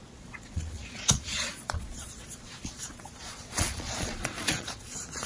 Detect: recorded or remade remade